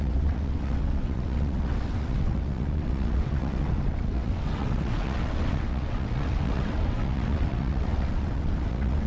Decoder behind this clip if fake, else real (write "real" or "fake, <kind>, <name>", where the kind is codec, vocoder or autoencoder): fake, vocoder, WaveNeXt